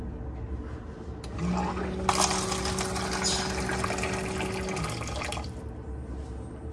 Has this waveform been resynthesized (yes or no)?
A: no